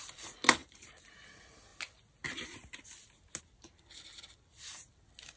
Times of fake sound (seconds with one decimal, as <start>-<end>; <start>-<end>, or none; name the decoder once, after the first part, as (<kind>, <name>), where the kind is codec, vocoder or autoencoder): 0.6-1.1 (vocoder, BigVGAN v2)